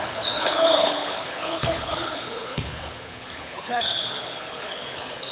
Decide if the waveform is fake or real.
fake